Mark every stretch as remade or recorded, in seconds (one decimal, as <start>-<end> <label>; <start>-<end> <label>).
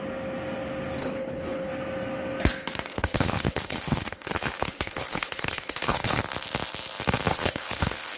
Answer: 0.0-1.0 recorded; 1.0-1.7 remade; 1.7-2.9 recorded; 2.9-6.2 remade; 6.2-7.3 recorded; 7.3-8.2 remade